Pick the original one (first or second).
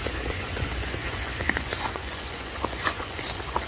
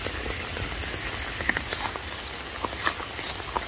second